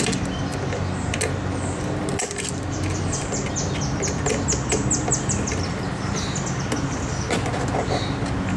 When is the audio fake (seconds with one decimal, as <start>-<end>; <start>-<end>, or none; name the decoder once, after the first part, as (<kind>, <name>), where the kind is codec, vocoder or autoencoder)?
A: none